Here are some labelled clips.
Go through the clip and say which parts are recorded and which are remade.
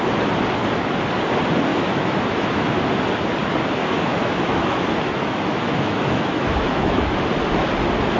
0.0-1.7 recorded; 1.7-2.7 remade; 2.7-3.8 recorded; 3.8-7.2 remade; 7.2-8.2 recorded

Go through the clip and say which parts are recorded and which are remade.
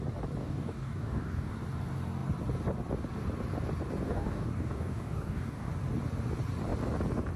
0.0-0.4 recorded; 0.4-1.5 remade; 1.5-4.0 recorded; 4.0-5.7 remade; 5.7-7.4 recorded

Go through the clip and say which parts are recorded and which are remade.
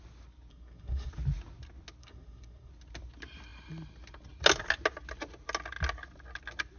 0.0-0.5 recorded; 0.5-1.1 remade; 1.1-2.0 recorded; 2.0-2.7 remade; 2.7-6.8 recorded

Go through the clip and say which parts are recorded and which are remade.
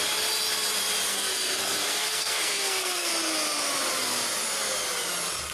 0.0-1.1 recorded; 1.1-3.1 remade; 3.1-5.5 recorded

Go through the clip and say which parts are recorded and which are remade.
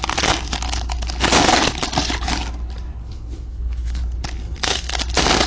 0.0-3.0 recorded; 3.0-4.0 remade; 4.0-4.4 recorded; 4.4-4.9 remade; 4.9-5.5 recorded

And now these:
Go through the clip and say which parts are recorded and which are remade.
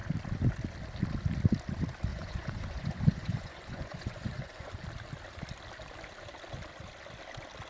0.0-2.1 recorded; 2.1-4.7 remade; 4.7-7.7 recorded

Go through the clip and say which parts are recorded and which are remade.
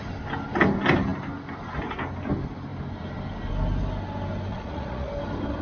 0.0-4.5 recorded; 4.5-5.1 remade; 5.1-5.6 recorded